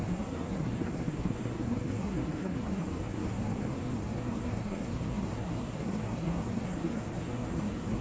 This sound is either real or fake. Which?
fake